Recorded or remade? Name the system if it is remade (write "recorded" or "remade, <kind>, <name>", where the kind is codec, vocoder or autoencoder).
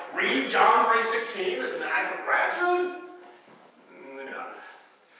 remade, codec, DAC